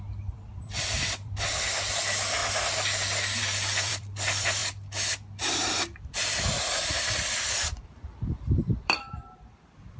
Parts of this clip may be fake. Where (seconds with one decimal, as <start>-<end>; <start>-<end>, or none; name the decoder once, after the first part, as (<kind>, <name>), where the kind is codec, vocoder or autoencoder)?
0.0-2.4 (vocoder, BigVGAN v2); 3.4-4.6; 6.6-10.0